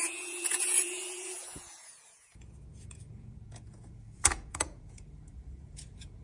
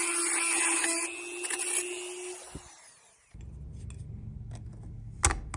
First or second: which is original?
second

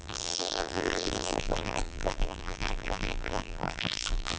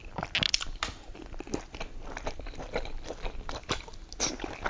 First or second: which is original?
second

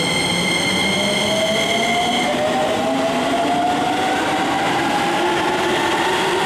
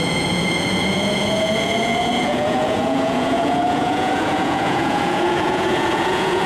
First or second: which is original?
first